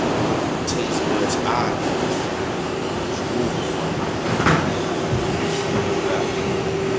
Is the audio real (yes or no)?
yes